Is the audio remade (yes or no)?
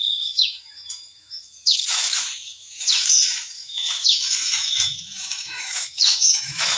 yes